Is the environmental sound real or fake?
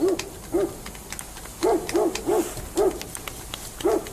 real